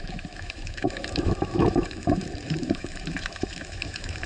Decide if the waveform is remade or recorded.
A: remade